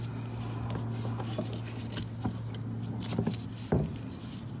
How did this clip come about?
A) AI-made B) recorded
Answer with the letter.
B